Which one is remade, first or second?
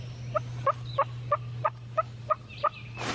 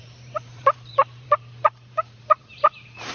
second